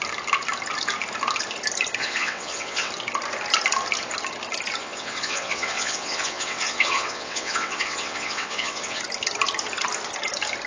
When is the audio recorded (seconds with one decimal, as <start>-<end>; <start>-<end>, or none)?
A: 0.0-2.0; 2.9-4.8; 9.0-10.7